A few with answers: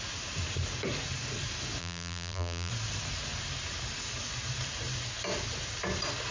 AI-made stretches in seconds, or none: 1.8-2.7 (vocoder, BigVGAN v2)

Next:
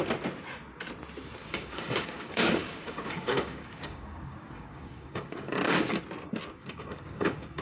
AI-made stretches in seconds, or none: 1.4-6.0 (codec, DAC); 6.6-7.6

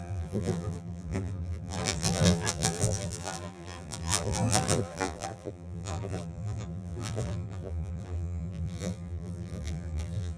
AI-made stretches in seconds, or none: 0.0-10.4 (vocoder, BigVGAN v2)

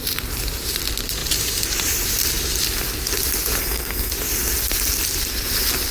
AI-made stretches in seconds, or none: 3.6-4.1 (codec, SNAC)